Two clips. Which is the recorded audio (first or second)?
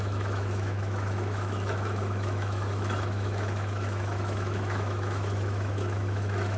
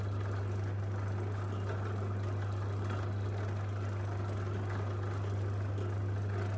second